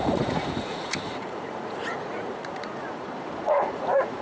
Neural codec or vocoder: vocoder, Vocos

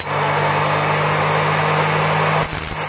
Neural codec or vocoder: none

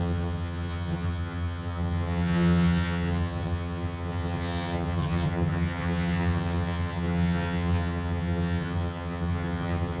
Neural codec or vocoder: vocoder, HiFi-GAN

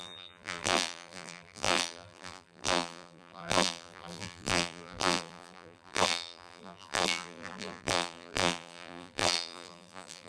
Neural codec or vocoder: vocoder, BigVGAN v2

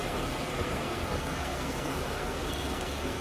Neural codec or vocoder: codec, SNAC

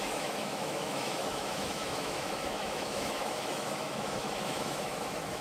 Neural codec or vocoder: autoencoder, DAC-VAE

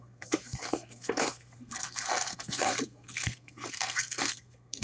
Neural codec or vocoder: codec, SNAC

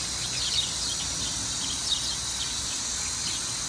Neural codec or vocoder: none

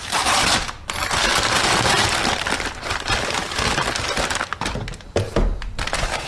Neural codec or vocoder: none